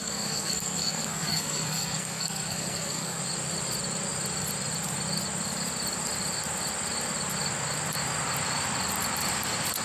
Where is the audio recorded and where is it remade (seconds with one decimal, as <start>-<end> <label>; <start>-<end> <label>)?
0.0-3.2 remade; 3.2-9.8 recorded